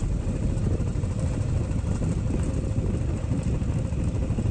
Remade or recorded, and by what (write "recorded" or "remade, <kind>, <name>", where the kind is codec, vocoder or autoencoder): recorded